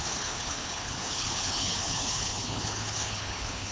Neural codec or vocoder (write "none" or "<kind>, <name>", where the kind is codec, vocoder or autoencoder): codec, HILCodec